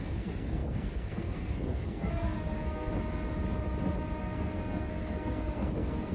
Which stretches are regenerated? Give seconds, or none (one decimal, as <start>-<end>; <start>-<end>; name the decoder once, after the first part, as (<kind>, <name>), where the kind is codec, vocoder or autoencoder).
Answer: 0.0-2.9 (codec, SNAC); 4.2-6.1